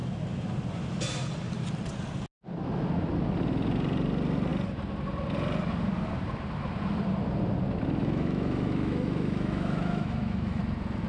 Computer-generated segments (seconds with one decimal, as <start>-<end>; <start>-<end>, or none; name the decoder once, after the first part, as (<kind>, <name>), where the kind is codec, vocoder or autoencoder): 8.0-10.6 (autoencoder, DAC-VAE)